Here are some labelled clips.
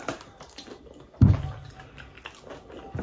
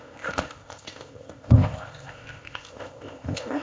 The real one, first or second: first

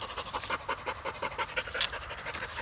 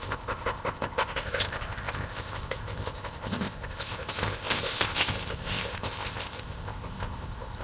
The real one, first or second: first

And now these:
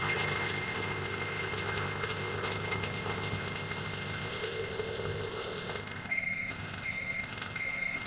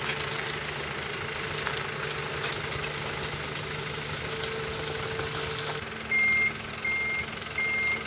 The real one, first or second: second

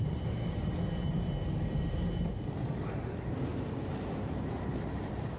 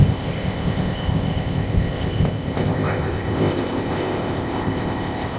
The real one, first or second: first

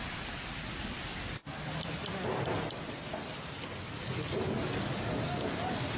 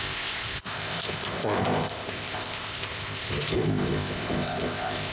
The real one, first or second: first